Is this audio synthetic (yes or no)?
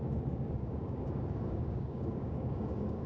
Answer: yes